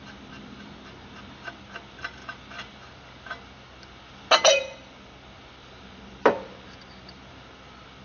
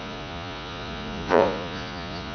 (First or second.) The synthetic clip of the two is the second